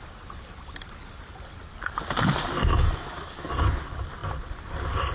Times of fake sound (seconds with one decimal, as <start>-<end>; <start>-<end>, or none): 2.7-3.5